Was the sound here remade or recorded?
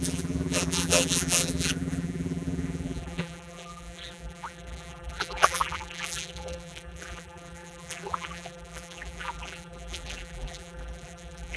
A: remade